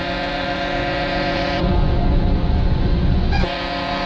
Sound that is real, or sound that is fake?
fake